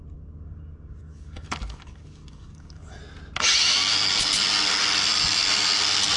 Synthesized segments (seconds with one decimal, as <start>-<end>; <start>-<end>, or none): 1.1-3.0